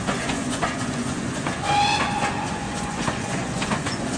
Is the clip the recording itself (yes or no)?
no